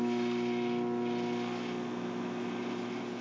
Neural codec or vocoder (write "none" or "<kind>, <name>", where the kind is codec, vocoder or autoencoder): none